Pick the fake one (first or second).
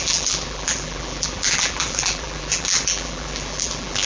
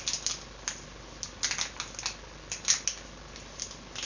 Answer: first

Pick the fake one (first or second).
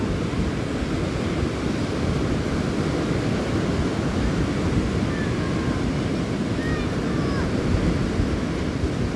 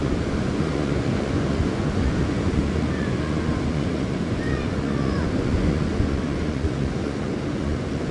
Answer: second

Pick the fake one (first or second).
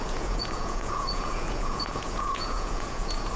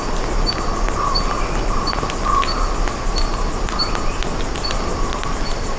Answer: first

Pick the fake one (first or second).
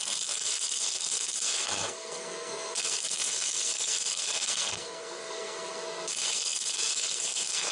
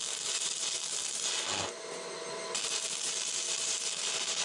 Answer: first